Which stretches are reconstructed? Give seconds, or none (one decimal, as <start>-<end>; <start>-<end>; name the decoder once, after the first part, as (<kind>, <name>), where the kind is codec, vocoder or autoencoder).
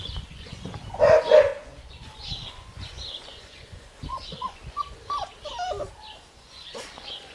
0.0-5.3 (vocoder, Vocos); 6.3-7.3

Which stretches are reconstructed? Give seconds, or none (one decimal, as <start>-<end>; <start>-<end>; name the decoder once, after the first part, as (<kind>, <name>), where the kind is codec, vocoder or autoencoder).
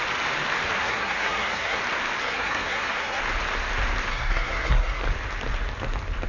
0.8-1.8 (codec, SNAC); 2.2-3.2; 4.1-5.0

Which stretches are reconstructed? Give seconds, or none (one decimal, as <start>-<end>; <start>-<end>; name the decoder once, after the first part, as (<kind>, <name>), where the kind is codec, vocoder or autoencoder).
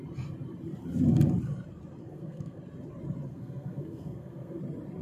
2.0-2.6 (codec, SNAC); 3.3-4.6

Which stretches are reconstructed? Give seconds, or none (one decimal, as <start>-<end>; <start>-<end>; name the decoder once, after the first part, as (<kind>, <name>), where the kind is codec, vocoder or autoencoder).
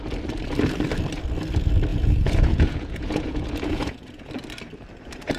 1.9-4.3 (vocoder, Vocos)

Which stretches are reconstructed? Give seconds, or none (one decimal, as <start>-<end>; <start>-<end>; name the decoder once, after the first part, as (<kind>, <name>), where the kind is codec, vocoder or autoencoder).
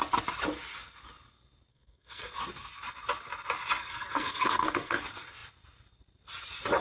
1.7-2.4 (codec, SNAC); 3.8-5.0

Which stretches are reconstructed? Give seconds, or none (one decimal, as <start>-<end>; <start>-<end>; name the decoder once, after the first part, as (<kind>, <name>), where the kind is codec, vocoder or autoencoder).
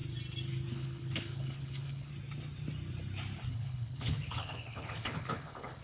0.7-2.1 (codec, HILCodec); 3.5-5.8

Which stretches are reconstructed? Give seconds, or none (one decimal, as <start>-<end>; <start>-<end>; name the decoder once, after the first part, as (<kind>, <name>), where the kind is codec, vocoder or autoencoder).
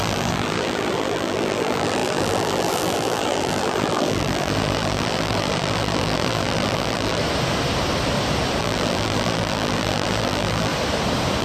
0.0-7.2 (vocoder, BigVGAN v2); 8.6-10.7